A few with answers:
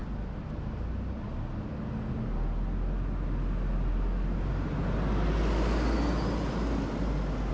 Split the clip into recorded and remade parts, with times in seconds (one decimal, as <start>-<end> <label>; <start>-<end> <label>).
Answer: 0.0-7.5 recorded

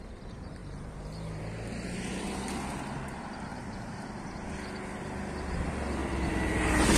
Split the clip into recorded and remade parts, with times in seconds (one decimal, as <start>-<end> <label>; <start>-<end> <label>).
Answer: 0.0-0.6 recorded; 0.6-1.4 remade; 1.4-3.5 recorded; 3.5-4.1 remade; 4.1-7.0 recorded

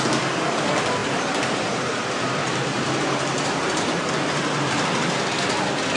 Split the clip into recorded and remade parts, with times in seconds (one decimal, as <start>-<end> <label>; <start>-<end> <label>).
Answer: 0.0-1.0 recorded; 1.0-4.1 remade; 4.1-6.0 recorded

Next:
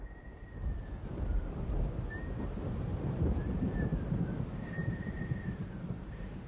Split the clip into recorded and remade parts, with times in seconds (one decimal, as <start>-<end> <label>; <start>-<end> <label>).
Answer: 0.0-2.9 recorded; 2.9-6.5 remade

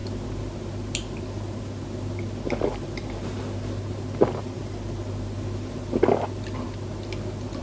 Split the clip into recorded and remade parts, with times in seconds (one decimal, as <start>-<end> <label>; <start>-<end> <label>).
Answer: 0.0-7.6 recorded